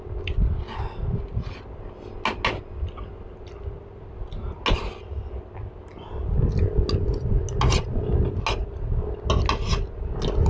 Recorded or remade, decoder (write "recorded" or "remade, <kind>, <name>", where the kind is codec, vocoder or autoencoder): recorded